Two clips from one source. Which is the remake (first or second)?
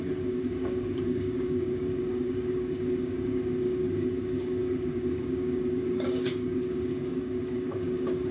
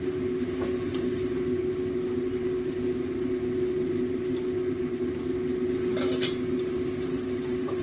first